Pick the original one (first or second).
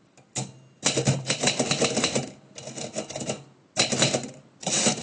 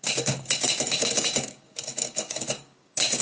first